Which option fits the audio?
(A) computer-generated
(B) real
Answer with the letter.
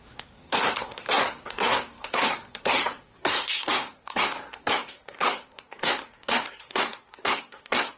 A